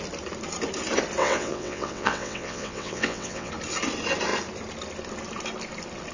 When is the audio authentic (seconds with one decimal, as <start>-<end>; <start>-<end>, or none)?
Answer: 0.0-1.2; 3.5-6.1